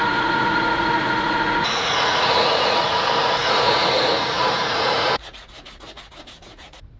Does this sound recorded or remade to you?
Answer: remade